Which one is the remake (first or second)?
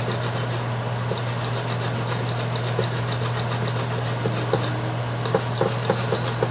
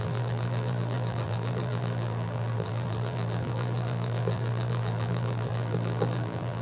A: second